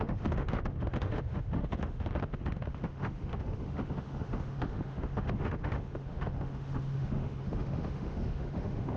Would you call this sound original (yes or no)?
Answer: no